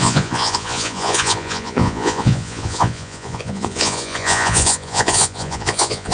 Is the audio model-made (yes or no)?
yes